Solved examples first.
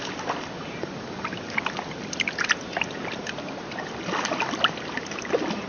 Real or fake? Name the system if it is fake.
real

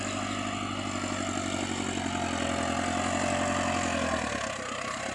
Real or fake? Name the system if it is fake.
real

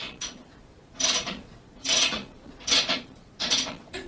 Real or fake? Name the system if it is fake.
fake, vocoder, Vocos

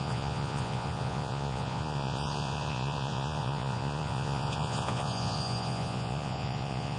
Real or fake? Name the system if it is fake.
fake, vocoder, Vocos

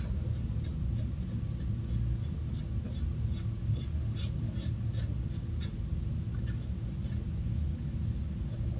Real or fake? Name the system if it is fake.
real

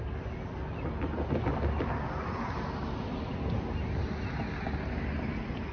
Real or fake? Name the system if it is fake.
real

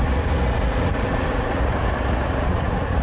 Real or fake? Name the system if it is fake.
fake, vocoder, Vocos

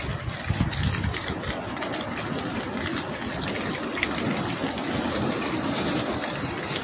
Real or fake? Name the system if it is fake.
real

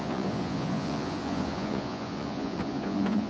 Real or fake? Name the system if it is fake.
fake, vocoder, Vocos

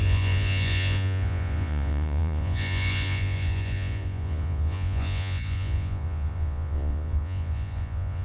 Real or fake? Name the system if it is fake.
fake, vocoder, Vocos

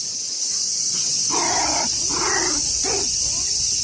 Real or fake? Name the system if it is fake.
fake, vocoder, Vocos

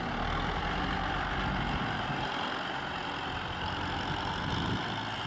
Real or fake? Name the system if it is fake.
real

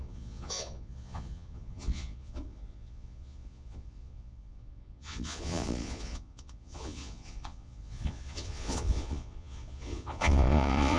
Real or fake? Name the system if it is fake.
fake, vocoder, Vocos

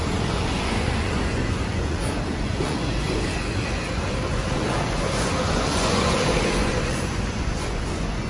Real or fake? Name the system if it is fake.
fake, vocoder, Vocos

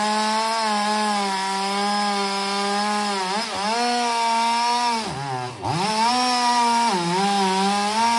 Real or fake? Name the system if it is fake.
real